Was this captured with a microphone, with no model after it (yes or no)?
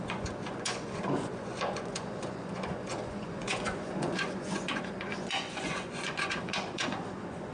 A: no